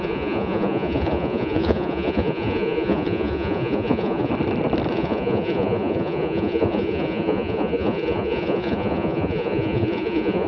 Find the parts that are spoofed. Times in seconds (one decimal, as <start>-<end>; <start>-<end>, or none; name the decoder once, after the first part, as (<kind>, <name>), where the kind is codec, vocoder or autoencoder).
0.0-4.3 (vocoder, Vocos); 4.9-10.5